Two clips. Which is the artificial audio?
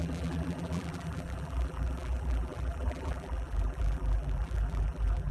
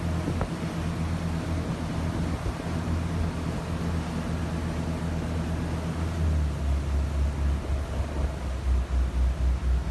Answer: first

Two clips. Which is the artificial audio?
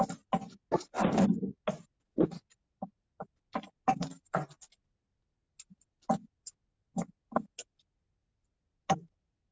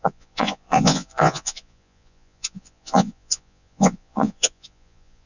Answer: second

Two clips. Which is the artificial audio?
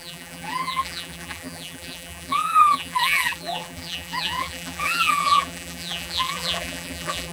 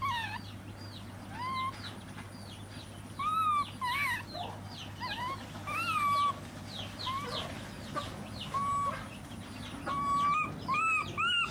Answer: first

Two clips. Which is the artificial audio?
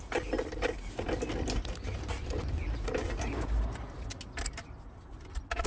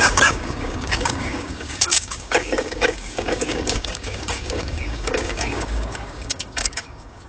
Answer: second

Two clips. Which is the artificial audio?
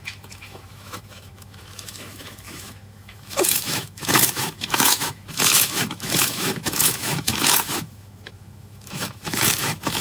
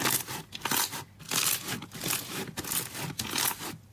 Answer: first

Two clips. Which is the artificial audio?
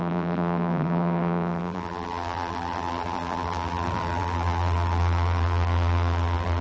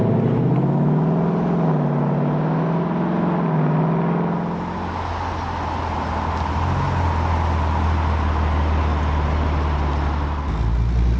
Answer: first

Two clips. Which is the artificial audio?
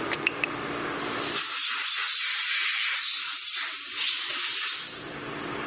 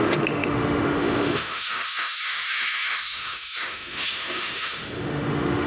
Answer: second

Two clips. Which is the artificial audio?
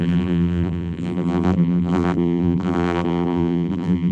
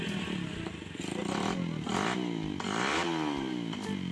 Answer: first